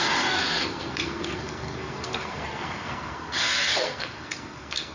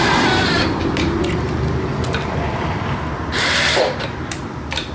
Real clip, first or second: second